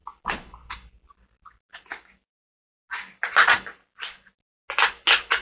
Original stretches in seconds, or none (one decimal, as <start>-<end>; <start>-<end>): 0.0-5.4